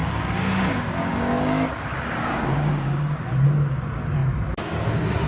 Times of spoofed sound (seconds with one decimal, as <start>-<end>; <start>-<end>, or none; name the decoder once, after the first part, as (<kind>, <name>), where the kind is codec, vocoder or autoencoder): 0.0-3.2 (codec, DAC)